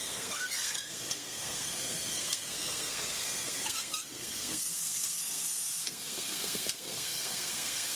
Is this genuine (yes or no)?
no